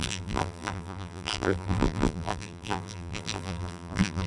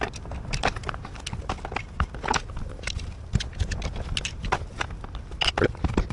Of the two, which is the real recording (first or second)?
second